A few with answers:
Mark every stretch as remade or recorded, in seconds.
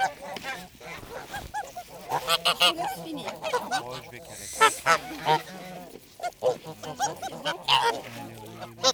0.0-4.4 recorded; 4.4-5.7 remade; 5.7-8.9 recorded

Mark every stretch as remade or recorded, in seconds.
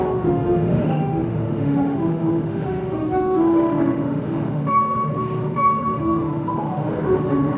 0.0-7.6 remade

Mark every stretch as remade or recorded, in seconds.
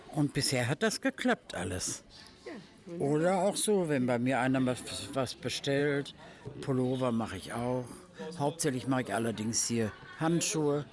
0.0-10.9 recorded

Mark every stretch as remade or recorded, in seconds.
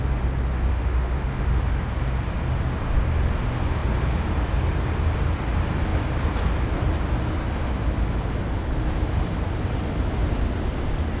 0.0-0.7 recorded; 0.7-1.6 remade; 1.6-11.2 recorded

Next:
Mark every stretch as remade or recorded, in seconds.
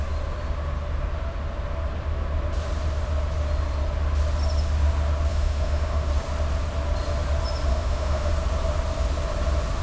0.0-5.3 recorded; 5.3-6.1 remade; 6.1-7.7 recorded; 7.7-8.3 remade; 8.3-9.8 recorded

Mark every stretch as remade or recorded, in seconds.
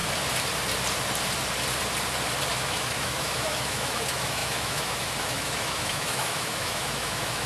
0.0-2.5 recorded; 2.5-7.5 remade